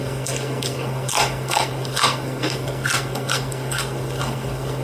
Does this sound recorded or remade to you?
remade